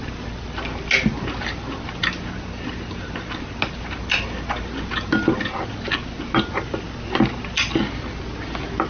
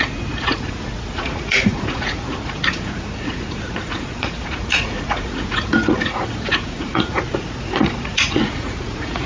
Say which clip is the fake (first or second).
second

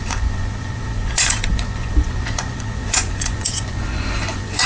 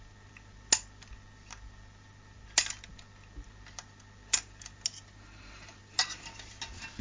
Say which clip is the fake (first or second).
first